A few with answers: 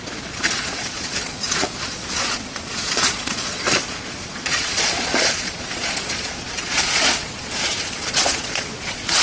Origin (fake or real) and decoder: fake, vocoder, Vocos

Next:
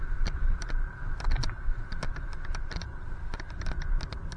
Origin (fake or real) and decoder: real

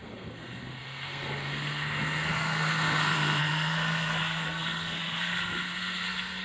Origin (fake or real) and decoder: fake, codec, SNAC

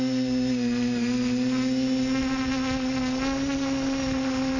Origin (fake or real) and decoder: real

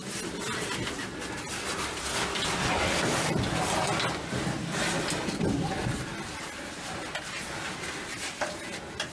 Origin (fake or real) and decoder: real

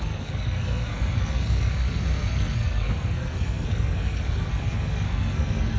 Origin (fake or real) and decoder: fake, codec, SNAC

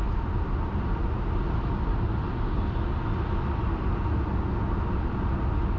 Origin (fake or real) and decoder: real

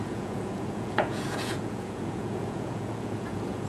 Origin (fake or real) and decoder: fake, vocoder, Vocos